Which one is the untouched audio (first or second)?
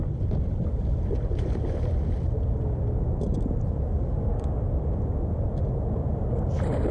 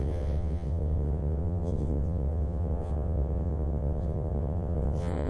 first